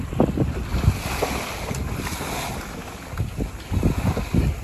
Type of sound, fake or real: real